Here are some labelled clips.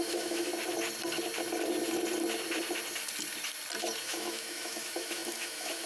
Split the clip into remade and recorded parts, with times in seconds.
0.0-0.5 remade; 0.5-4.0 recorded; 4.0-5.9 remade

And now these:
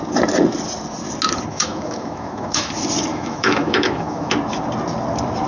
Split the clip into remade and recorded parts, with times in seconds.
0.0-1.5 recorded; 1.5-2.7 remade; 2.7-3.1 recorded; 3.1-4.3 remade; 4.3-5.5 recorded

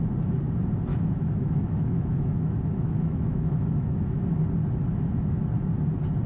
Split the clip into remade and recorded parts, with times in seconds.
0.0-0.9 recorded; 0.9-4.3 remade; 4.3-6.3 recorded

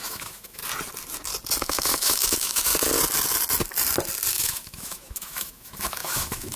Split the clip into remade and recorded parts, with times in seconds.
0.0-0.6 remade; 0.6-1.6 recorded; 1.6-2.7 remade; 2.7-4.3 recorded; 4.3-6.6 remade

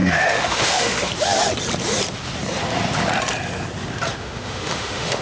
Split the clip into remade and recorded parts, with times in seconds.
0.0-1.1 remade; 1.1-4.2 recorded; 4.2-5.2 remade